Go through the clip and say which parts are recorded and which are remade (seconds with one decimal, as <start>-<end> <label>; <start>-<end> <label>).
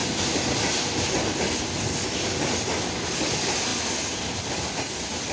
0.0-5.3 recorded